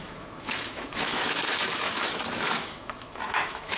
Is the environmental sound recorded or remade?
remade